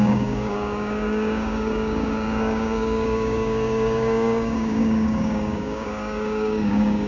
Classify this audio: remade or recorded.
remade